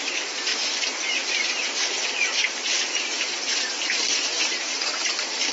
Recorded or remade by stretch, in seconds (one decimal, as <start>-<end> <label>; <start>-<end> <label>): 0.0-5.5 remade